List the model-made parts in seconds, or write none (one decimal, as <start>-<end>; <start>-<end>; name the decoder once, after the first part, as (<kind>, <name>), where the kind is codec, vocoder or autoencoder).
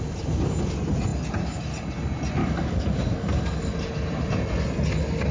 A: 2.4-3.7 (codec, DAC)